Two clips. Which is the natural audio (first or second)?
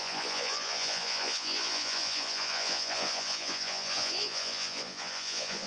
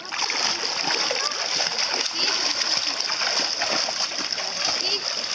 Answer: second